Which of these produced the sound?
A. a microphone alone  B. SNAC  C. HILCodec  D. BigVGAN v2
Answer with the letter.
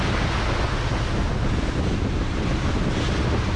A